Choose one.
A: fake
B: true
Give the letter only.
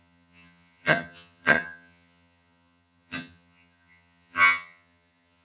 A